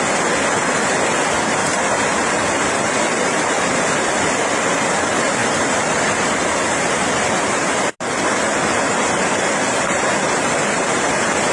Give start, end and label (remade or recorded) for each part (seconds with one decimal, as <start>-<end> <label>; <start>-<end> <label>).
0.0-1.6 recorded; 1.6-2.7 remade; 2.7-5.4 recorded; 5.4-6.3 remade; 6.3-11.5 recorded